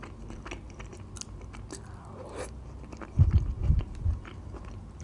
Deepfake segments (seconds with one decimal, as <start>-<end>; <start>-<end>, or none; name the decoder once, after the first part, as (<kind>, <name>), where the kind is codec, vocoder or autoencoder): none